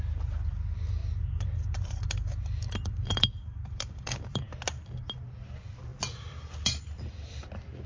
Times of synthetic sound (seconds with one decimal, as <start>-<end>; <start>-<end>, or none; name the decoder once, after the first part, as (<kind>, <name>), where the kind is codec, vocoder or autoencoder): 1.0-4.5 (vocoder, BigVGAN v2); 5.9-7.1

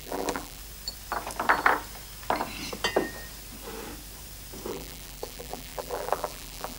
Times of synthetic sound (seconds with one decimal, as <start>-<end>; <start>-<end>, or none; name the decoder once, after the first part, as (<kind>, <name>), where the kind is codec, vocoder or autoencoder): 0.0-0.6 (vocoder, BigVGAN v2); 4.7-6.8

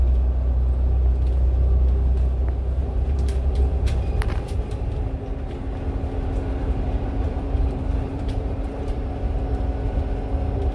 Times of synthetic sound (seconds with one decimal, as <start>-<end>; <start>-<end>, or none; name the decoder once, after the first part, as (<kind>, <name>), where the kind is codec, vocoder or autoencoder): 2.8-4.8 (vocoder, BigVGAN v2); 6.6-9.1

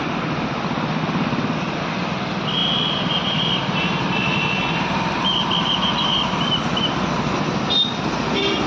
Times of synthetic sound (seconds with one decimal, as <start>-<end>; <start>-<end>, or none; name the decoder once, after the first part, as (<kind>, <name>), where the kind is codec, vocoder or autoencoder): none

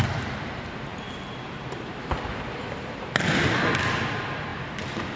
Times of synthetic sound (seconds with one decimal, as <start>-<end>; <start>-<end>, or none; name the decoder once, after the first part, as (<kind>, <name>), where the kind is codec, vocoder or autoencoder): none

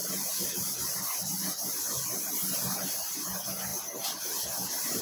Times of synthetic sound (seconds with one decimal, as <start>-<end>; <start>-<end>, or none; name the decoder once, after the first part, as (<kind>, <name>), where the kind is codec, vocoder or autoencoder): 0.0-2.2 (vocoder, BigVGAN v2); 3.7-5.0

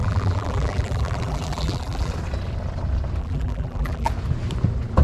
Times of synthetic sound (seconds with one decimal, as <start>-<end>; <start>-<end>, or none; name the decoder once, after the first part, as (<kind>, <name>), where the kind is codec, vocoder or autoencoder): 0.0-2.1 (vocoder, BigVGAN v2); 3.2-4.1

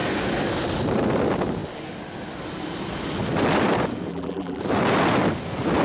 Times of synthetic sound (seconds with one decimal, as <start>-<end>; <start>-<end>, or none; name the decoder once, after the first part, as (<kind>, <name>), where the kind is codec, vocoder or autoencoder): 4.1-4.6 (vocoder, BigVGAN v2)